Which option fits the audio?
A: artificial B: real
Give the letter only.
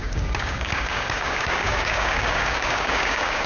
A